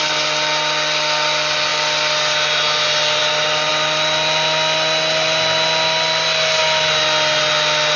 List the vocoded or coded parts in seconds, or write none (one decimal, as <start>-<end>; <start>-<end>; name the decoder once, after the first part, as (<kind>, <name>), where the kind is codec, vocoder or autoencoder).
none